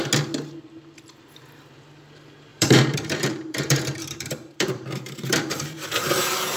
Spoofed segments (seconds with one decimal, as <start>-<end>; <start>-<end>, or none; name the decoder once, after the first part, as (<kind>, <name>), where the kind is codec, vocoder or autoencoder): 2.5-6.6 (vocoder, BigVGAN v2)